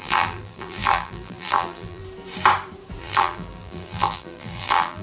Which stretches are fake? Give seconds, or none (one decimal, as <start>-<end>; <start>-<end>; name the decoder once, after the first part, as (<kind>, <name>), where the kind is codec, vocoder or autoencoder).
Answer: 0.0-2.0 (vocoder, BigVGAN v2); 3.0-5.0